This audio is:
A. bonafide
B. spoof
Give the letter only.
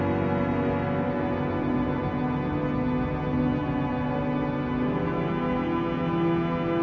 A